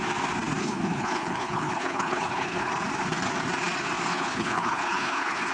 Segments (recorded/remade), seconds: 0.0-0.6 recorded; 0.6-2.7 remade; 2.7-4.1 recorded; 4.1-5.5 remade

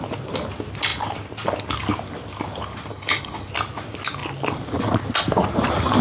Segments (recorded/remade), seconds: 0.0-2.9 recorded; 2.9-3.5 remade; 3.5-6.0 recorded

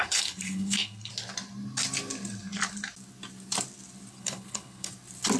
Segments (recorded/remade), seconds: 0.0-1.1 remade; 1.1-4.1 recorded; 4.1-4.9 remade; 4.9-5.4 recorded

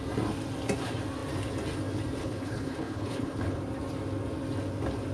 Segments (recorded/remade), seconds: 0.0-2.2 recorded; 2.2-3.6 remade; 3.6-5.1 recorded

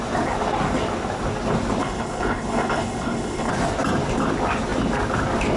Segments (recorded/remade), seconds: 0.0-1.8 recorded; 1.8-3.5 remade; 3.5-5.6 recorded

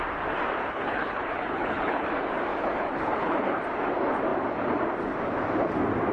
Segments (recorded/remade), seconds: 0.0-0.6 recorded; 0.6-2.1 remade; 2.1-2.5 recorded; 2.5-3.6 remade; 3.6-6.1 recorded